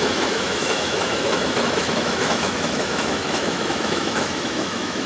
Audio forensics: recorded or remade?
remade